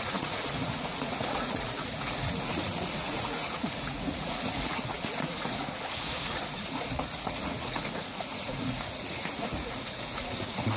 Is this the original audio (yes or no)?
no